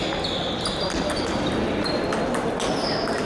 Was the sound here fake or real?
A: real